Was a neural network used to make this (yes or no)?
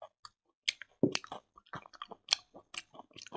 no